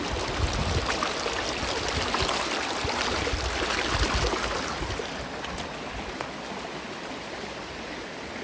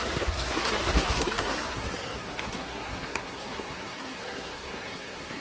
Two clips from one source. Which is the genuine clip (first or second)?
first